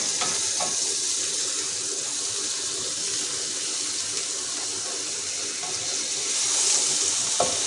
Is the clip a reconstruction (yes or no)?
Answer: no